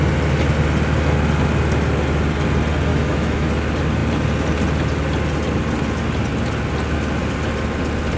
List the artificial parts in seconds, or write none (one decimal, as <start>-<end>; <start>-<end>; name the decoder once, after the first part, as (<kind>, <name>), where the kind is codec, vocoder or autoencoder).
2.9-3.5 (autoencoder, DAC-VAE)